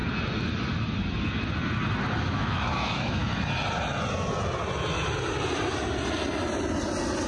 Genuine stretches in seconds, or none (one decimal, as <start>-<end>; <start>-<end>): 0.0-2.2; 3.2-7.3